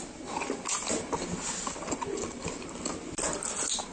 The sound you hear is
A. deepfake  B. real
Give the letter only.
B